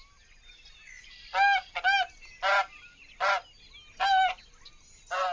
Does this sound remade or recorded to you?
recorded